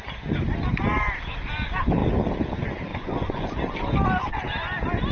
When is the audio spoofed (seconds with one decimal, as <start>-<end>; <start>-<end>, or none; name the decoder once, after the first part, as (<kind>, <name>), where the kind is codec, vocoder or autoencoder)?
2.9-3.5 (vocoder, Vocos)